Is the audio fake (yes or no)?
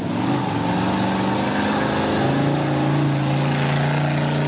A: no